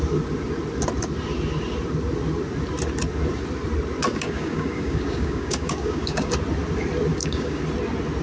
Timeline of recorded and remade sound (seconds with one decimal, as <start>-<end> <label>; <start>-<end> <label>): 0.0-4.1 recorded; 4.1-6.3 remade; 6.3-7.1 recorded; 7.1-7.6 remade; 7.6-8.2 recorded